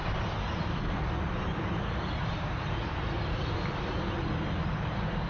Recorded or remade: recorded